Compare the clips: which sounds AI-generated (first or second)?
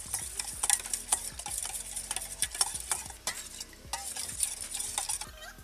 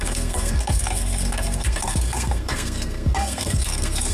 second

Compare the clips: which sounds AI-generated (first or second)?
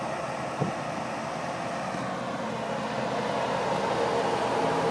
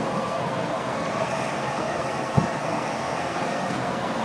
second